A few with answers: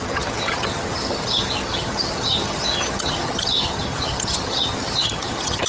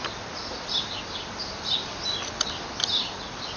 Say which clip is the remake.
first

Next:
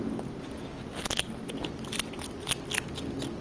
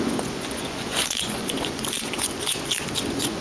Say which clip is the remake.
second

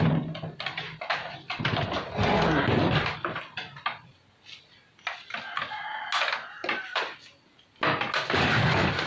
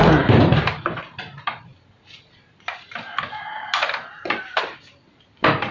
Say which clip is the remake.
second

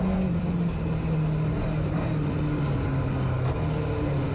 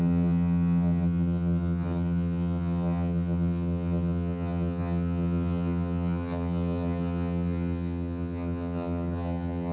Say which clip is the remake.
second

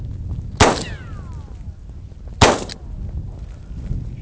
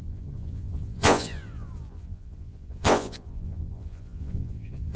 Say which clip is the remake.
second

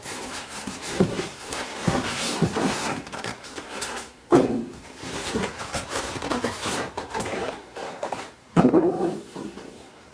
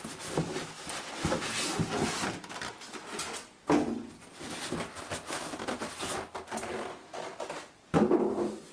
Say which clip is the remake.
first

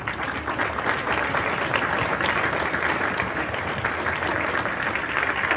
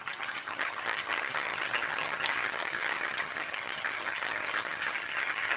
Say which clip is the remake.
second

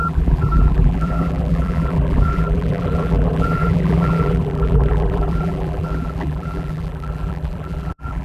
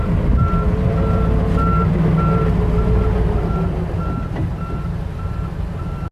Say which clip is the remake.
first